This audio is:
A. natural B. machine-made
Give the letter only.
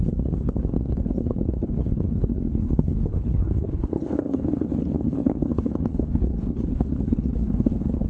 B